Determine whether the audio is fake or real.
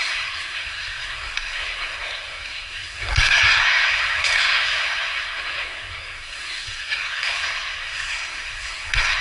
fake